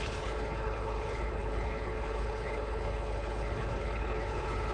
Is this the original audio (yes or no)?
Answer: no